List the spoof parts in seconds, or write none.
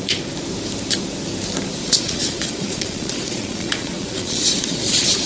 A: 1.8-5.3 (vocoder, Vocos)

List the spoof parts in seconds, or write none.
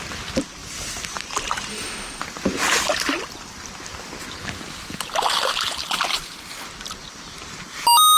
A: 1.7-2.2 (autoencoder, DAC-VAE)